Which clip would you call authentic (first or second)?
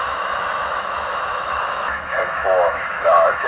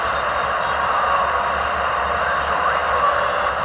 second